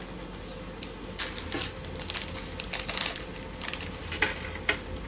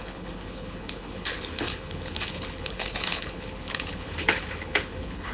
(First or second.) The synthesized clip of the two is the second